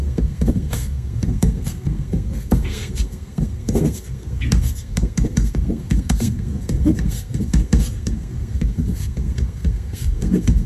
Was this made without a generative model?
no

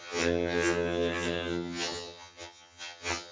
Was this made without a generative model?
no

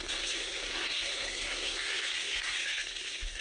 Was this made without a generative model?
no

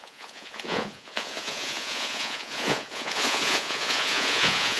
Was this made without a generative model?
no